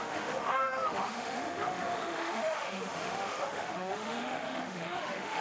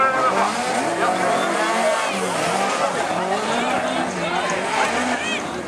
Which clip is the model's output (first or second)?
first